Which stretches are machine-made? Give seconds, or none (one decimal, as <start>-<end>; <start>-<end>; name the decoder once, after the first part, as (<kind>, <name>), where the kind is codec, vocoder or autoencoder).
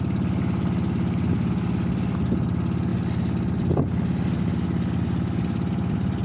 none